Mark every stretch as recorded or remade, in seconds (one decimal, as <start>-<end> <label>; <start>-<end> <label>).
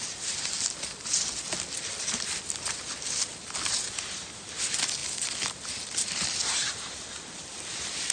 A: 0.0-8.1 recorded